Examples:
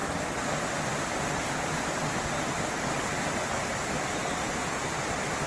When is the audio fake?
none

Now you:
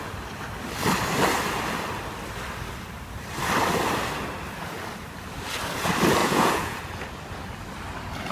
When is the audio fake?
6.2-6.8 (vocoder, Vocos)

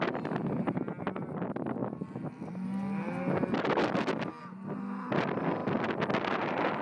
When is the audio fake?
none

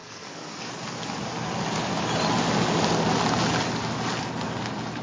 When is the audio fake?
0.0-0.7 (codec, SNAC)